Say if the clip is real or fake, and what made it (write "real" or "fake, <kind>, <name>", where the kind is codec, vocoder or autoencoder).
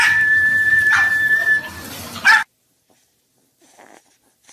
real